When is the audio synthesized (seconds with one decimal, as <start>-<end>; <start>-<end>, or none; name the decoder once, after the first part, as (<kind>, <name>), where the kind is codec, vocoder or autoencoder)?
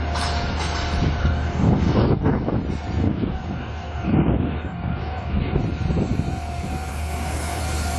1.2-2.6 (codec, DAC); 3.0-5.6; 6.9-7.6